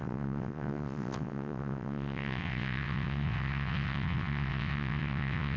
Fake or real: fake